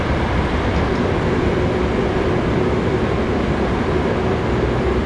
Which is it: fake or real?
real